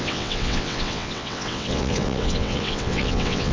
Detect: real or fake fake